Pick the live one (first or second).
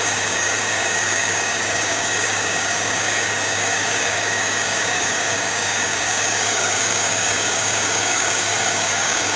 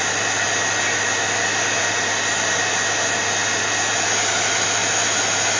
second